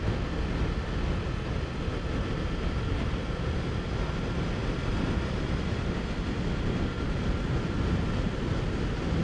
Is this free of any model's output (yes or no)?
yes